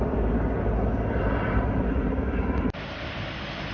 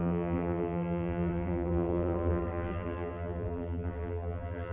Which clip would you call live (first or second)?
first